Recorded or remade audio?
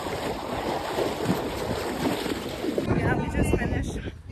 recorded